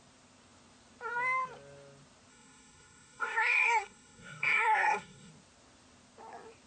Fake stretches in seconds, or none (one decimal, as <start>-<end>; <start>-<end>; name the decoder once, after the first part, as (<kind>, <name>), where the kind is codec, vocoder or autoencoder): 2.3-5.3 (codec, SNAC)